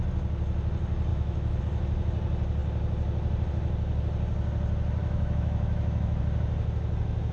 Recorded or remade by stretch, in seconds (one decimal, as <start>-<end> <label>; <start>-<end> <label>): 0.0-1.1 recorded; 1.1-1.6 remade; 1.6-5.0 recorded; 5.0-6.2 remade; 6.2-7.3 recorded